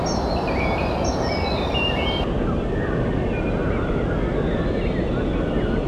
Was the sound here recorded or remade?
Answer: recorded